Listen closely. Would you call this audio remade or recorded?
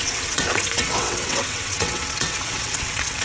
remade